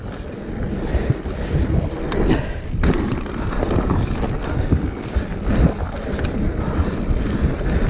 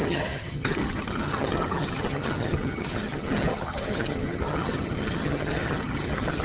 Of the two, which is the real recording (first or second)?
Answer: first